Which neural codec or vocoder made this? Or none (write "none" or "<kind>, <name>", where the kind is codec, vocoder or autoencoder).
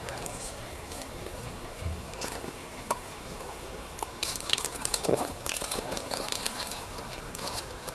codec, SNAC